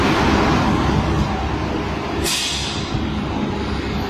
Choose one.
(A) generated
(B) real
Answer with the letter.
B